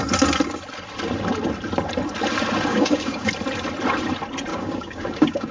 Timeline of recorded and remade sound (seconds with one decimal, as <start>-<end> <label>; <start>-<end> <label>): 0.0-2.7 recorded; 2.7-3.3 remade; 3.3-4.5 recorded; 4.5-5.5 remade